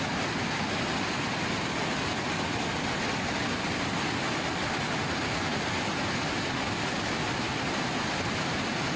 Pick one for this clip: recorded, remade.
recorded